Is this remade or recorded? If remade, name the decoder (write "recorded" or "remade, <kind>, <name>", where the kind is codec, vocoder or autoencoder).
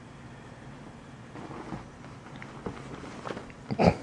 recorded